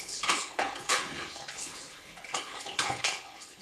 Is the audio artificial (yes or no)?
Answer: yes